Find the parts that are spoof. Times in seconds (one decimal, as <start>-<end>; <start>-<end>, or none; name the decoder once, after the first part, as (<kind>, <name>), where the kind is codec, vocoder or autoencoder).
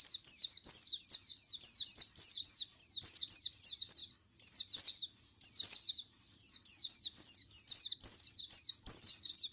none